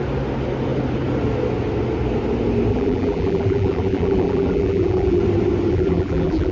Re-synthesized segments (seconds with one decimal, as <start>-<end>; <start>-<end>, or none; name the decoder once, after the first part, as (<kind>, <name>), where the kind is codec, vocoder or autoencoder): 2.7-5.2 (vocoder, BigVGAN v2); 5.7-6.5